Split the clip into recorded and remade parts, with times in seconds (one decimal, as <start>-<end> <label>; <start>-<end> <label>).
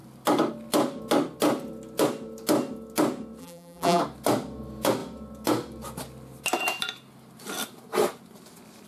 0.0-3.4 recorded; 3.4-4.0 remade; 4.0-8.9 recorded